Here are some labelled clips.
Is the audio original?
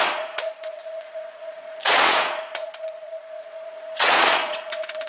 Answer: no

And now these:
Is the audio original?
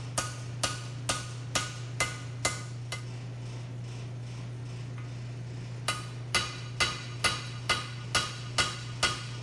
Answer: yes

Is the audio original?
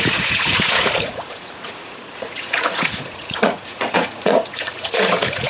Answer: no